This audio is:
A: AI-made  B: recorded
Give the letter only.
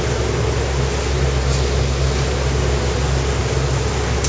B